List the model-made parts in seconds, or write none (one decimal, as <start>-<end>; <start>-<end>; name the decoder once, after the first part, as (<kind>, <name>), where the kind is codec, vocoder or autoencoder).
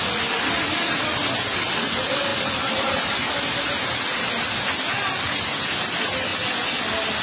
2.3-3.1 (vocoder, BigVGAN v2); 6.3-7.2